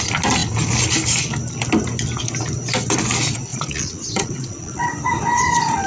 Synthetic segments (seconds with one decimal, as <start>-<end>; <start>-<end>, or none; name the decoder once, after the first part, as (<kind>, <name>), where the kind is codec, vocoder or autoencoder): 3.5-4.8 (vocoder, Vocos)

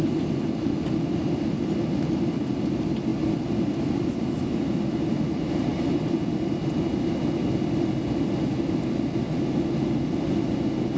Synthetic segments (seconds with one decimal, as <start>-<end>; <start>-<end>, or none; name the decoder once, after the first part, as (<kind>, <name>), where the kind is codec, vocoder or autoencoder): none

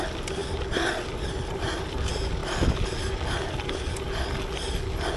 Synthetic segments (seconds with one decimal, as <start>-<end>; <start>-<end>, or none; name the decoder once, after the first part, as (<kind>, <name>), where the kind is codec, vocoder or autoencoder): none

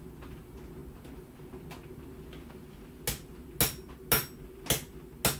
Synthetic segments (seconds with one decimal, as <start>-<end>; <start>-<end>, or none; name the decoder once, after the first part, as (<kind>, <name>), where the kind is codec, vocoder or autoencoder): none

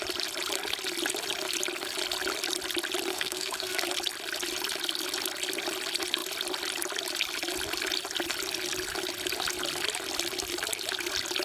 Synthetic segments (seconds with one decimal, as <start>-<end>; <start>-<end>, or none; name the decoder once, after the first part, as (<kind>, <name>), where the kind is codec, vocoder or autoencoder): 3.1-3.8 (codec, SNAC)